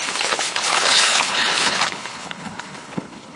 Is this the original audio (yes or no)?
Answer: no